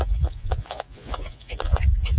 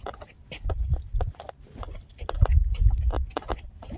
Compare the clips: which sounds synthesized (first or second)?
first